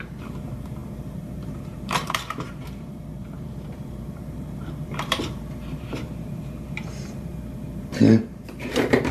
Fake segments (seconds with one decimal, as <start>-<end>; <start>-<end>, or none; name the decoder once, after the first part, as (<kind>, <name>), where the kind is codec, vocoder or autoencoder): 0.0-9.1 (vocoder, BigVGAN v2)